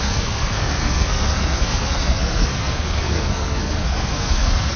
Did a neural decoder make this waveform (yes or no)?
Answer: yes